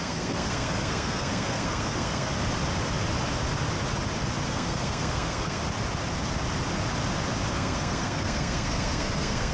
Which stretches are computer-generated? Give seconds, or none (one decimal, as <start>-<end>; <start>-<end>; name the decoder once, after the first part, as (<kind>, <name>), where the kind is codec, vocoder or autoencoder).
0.0-2.3 (codec, SNAC); 4.5-5.6; 7.5-9.5